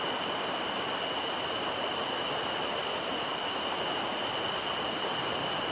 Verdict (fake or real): real